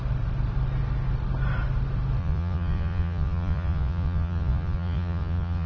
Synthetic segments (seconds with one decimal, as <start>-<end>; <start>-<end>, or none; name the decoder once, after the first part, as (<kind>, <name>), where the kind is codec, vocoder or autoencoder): 2.2-5.7 (vocoder, Vocos)

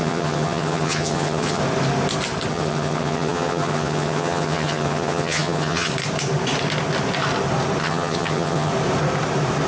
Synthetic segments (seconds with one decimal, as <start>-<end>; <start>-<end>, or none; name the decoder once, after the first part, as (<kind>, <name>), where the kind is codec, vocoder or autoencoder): 0.0-1.6 (vocoder, HiFi-GAN); 2.5-5.9; 7.8-8.7

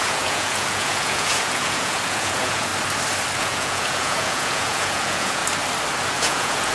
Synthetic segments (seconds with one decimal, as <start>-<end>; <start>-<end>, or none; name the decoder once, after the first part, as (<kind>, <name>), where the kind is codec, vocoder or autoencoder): 0.0-2.7 (vocoder, Vocos); 3.4-5.4; 6.2-6.7

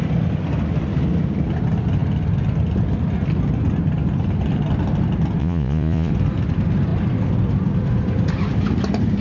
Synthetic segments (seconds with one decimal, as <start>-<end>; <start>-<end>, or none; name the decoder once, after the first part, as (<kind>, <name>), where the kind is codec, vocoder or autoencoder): 5.4-6.1 (vocoder, Vocos)